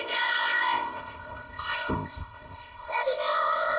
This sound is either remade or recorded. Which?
remade